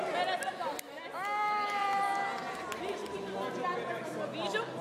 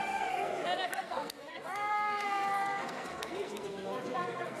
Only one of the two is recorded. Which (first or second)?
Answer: first